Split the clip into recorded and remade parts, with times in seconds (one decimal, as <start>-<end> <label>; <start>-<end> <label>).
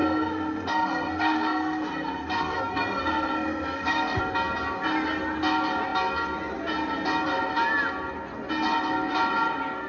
0.0-4.2 remade; 4.2-9.9 recorded